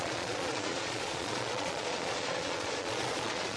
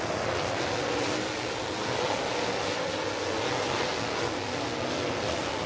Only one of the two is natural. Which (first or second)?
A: second